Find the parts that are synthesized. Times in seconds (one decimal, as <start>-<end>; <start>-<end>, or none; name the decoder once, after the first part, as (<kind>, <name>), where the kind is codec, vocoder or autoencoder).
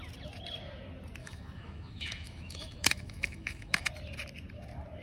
1.2-3.9 (autoencoder, DAC-VAE)